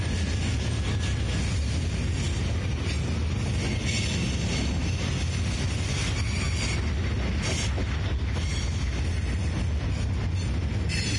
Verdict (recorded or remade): recorded